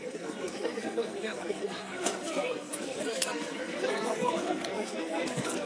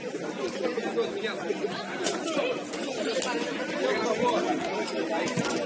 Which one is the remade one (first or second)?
first